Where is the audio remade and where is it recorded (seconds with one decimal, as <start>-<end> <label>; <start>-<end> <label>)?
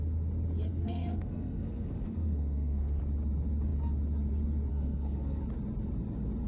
0.0-0.7 recorded; 0.7-3.0 remade; 3.0-4.7 recorded; 4.7-5.4 remade; 5.4-6.5 recorded